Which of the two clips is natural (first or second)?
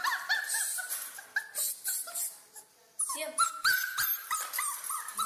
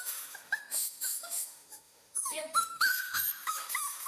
first